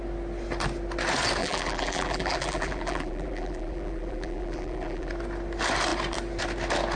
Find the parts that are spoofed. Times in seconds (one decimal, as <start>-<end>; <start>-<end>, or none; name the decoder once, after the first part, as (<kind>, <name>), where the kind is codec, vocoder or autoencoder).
1.4-5.1 (vocoder, BigVGAN v2)

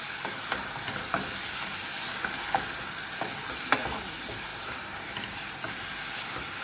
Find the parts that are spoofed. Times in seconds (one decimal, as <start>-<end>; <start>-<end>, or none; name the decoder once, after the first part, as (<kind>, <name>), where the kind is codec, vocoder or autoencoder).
4.5-5.4 (vocoder, BigVGAN v2)

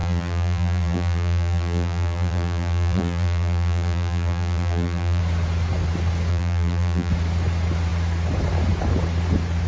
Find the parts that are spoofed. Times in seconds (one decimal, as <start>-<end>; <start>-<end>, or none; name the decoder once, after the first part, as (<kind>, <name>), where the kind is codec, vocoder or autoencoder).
0.0-5.2 (vocoder, BigVGAN v2); 6.3-7.1